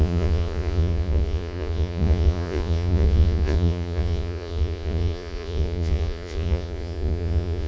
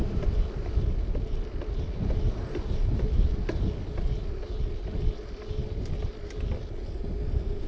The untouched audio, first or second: second